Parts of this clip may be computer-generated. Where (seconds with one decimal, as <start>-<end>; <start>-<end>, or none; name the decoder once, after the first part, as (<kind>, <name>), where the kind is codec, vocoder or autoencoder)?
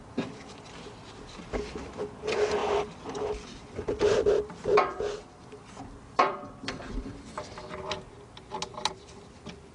2.6-7.2 (vocoder, BigVGAN v2)